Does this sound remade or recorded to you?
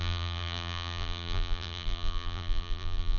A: remade